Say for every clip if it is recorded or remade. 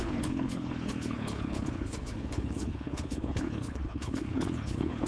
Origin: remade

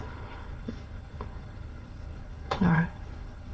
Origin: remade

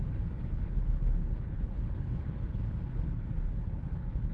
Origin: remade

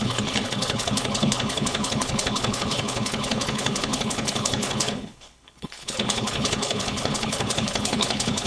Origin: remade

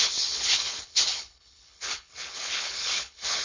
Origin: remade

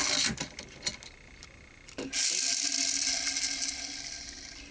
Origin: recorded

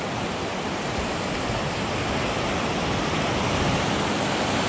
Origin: recorded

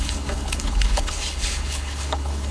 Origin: remade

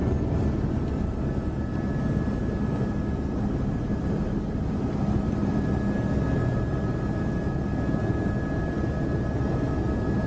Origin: recorded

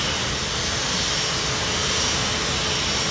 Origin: recorded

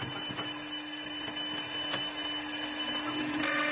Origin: recorded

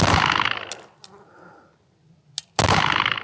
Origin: recorded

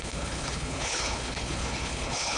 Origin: remade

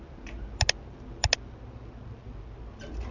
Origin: recorded